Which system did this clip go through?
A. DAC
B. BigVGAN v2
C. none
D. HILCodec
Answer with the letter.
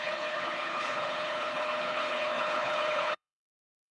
D